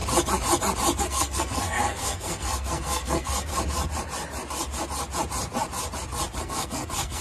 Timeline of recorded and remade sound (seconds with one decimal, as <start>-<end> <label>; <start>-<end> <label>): 0.0-1.0 recorded; 1.0-3.5 remade; 3.5-6.4 recorded; 6.4-7.2 remade